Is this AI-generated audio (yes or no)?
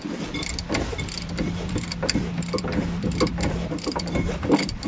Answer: yes